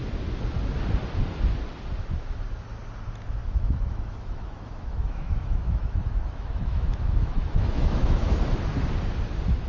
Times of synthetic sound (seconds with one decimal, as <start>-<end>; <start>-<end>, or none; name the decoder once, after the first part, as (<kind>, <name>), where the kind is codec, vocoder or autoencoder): 3.4-8.4 (autoencoder, DAC-VAE)